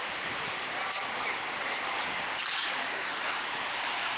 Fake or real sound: real